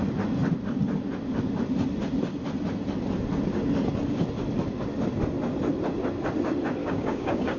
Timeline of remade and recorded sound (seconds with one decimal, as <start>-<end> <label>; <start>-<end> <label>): 0.0-6.8 recorded; 6.8-7.6 remade